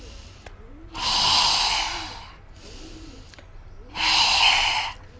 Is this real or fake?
real